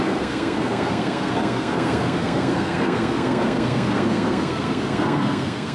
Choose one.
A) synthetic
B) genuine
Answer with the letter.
A